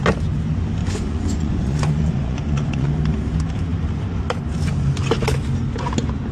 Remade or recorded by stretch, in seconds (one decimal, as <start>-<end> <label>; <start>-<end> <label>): 0.0-0.8 recorded; 0.8-2.9 remade; 2.9-6.3 recorded